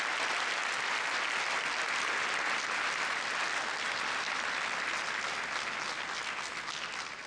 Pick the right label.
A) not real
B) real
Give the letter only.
B